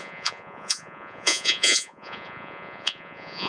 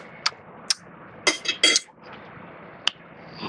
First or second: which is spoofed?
first